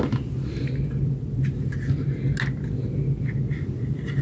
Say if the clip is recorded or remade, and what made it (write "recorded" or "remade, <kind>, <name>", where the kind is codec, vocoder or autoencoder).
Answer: recorded